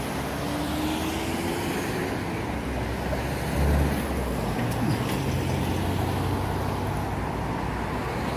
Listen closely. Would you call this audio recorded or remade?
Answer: recorded